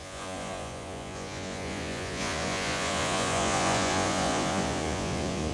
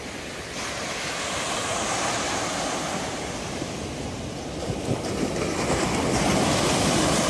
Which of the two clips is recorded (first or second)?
second